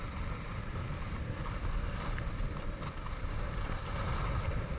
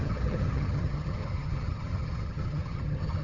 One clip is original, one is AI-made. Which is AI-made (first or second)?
second